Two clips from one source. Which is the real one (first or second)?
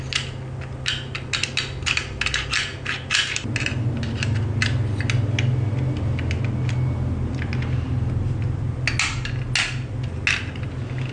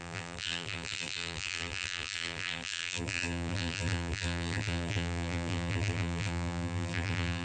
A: first